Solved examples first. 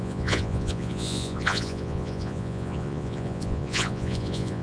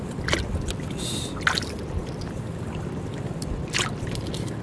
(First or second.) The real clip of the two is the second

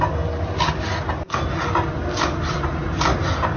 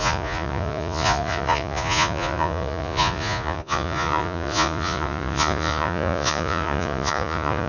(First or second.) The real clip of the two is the first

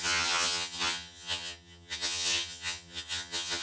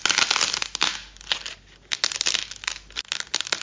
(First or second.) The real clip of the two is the second